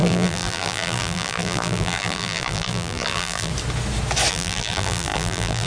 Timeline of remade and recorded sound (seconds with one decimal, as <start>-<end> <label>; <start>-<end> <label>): 0.0-3.5 remade; 3.5-4.3 recorded; 4.3-5.7 remade